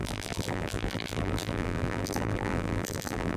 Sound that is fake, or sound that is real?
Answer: fake